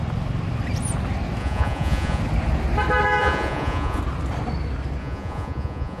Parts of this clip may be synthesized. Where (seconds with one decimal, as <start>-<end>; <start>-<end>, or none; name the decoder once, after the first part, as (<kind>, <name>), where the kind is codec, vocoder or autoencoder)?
1.4-2.2 (vocoder, Vocos); 3.2-4.0; 5.0-6.0